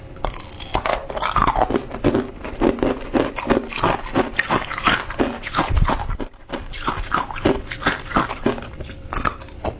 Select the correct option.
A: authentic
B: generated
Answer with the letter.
A